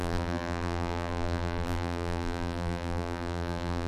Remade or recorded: remade